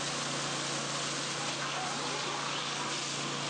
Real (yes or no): yes